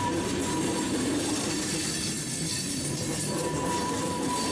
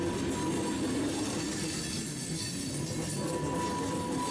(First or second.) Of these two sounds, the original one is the second